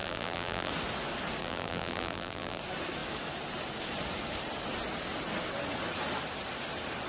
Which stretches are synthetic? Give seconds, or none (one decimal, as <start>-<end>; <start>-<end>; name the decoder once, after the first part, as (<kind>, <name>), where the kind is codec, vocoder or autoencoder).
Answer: 0.0-0.7 (vocoder, BigVGAN v2); 1.4-2.6